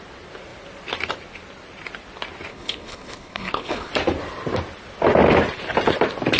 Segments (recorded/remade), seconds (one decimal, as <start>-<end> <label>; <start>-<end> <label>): 0.0-2.5 recorded; 2.5-3.9 remade; 3.9-6.4 recorded